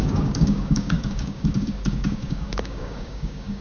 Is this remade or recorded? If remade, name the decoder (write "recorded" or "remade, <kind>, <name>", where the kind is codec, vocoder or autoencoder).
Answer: remade, codec, DAC